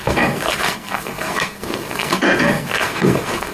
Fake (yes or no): yes